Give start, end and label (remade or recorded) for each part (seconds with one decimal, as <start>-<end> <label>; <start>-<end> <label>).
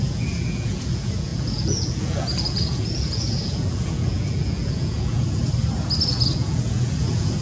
0.0-5.4 remade; 5.4-6.1 recorded; 6.1-7.4 remade